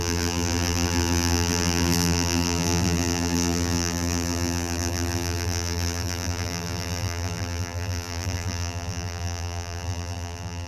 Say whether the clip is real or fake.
fake